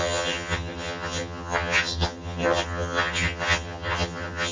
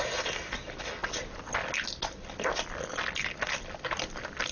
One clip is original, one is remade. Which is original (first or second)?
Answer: second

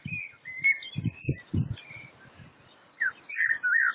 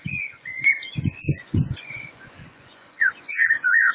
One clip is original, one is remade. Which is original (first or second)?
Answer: first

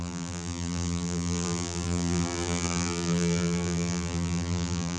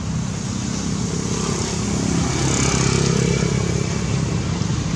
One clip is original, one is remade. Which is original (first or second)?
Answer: second